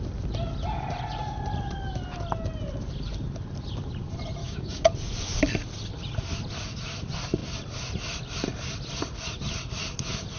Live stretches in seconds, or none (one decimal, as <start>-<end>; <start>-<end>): 0.0-4.4; 4.9-10.4